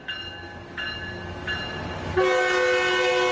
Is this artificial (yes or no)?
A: no